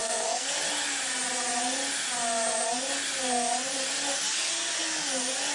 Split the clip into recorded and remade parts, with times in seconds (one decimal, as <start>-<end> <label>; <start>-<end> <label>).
0.0-0.5 remade; 0.5-5.5 recorded

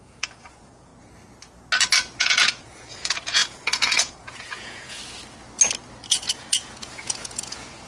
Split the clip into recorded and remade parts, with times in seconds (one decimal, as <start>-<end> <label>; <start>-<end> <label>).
0.0-0.9 remade; 0.9-2.2 recorded; 2.2-5.0 remade; 5.0-6.1 recorded; 6.1-7.9 remade

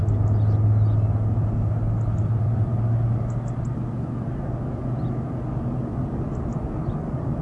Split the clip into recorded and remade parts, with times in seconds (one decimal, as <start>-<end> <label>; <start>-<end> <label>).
0.0-2.2 recorded; 2.2-2.7 remade; 2.7-7.0 recorded; 7.0-7.4 remade

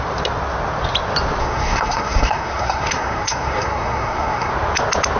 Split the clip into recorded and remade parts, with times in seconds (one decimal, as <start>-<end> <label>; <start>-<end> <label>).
0.0-1.4 recorded; 1.4-4.5 remade; 4.5-5.2 recorded

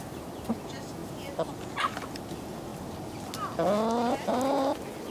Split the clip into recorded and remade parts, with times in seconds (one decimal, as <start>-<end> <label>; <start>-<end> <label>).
0.0-5.1 recorded

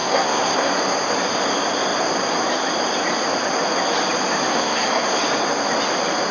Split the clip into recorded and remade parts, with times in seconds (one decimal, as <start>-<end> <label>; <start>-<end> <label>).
0.0-0.7 remade; 0.7-4.5 recorded; 4.5-5.2 remade; 5.2-6.3 recorded

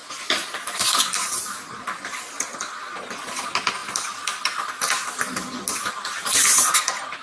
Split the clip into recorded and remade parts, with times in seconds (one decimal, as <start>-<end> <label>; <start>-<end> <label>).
0.0-7.2 recorded

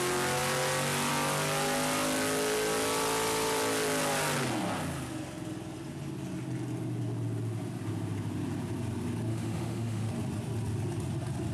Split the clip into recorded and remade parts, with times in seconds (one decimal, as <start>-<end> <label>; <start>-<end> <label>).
0.0-9.3 recorded; 9.3-10.1 remade; 10.1-11.5 recorded